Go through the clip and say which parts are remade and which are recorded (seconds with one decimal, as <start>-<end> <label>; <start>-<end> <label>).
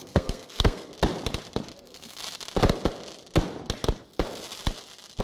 0.0-0.9 remade; 0.9-1.8 recorded; 1.8-2.2 remade; 2.2-5.2 recorded